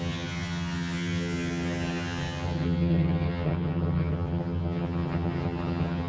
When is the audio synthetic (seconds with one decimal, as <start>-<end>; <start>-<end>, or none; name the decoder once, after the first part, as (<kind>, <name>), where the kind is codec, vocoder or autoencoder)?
0.0-6.1 (vocoder, HiFi-GAN)